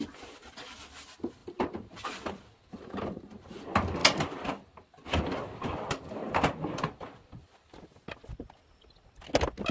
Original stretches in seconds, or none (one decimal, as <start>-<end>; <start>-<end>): 0.0-4.0; 7.8-9.7